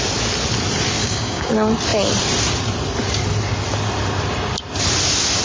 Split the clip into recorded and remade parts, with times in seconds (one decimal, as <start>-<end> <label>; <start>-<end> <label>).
0.0-1.0 recorded; 1.0-1.5 remade; 1.5-5.4 recorded